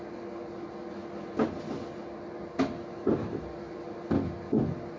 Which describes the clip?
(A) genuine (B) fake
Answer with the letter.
A